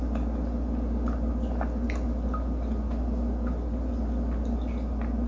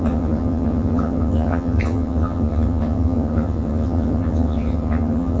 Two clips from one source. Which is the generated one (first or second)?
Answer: second